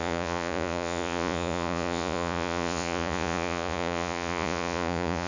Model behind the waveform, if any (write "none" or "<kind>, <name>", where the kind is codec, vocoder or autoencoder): vocoder, Vocos